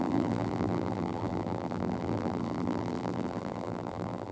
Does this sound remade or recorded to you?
remade